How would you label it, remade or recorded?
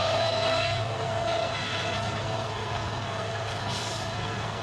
remade